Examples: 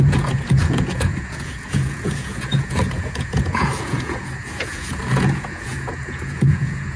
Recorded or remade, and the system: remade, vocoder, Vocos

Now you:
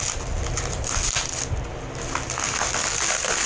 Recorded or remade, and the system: recorded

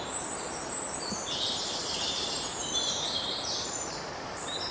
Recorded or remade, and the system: remade, vocoder, BigVGAN v2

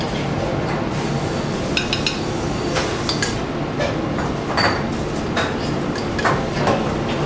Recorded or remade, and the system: recorded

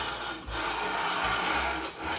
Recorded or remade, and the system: recorded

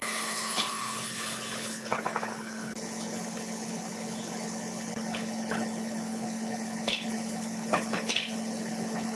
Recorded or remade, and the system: remade, codec, HILCodec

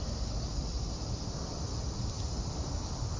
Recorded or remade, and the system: recorded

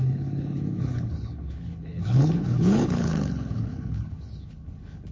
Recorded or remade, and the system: remade, codec, HILCodec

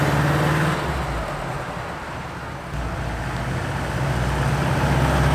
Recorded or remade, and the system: recorded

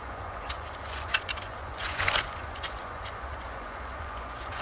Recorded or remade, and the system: remade, vocoder, Vocos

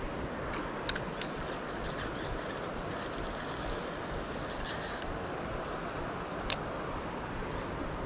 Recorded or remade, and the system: recorded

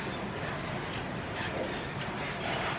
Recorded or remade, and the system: recorded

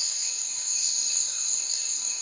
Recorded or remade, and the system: remade, codec, DAC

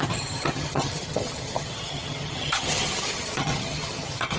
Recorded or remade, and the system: remade, vocoder, HiFi-GAN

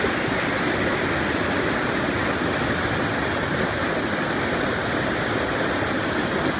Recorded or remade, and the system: recorded